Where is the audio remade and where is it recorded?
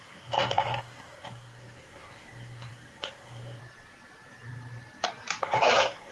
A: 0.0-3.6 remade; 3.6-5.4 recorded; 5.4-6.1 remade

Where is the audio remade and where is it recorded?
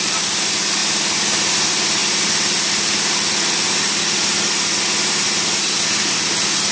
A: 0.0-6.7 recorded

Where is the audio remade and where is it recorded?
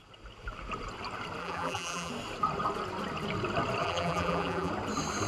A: 0.0-1.4 recorded; 1.4-2.1 remade; 2.1-3.8 recorded; 3.8-4.7 remade; 4.7-5.3 recorded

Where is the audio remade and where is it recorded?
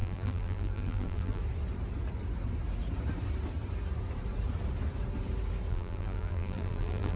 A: 0.0-1.4 remade; 1.4-5.7 recorded; 5.7-7.2 remade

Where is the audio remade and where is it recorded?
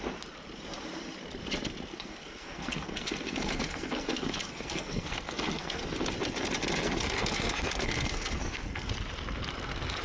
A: 0.0-1.9 recorded; 1.9-5.8 remade; 5.8-6.8 recorded; 6.8-8.9 remade; 8.9-10.0 recorded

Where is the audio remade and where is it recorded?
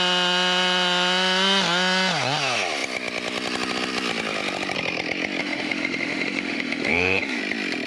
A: 0.0-5.4 recorded; 5.4-7.4 remade; 7.4-7.9 recorded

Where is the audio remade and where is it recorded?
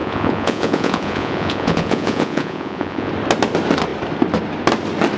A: 0.0-3.1 remade; 3.1-5.2 recorded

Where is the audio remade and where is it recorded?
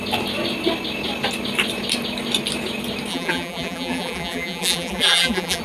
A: 0.0-3.1 recorded; 3.1-5.6 remade